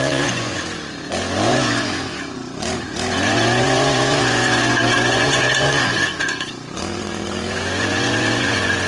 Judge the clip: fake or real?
fake